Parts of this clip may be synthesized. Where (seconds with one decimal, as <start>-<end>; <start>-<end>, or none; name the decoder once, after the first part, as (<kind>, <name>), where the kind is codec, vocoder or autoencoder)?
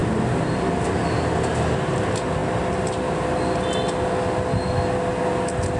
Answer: none